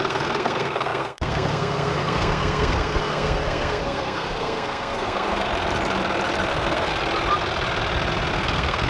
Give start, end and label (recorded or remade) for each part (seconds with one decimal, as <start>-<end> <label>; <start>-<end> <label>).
0.0-5.5 remade; 5.5-6.5 recorded; 6.5-6.9 remade; 6.9-8.3 recorded; 8.3-8.9 remade